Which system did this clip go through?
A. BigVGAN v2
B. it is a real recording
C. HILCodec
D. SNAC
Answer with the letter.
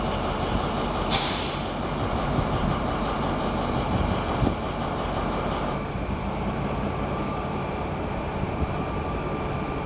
A